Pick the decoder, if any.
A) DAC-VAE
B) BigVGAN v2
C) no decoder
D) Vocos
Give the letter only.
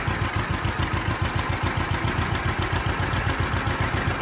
C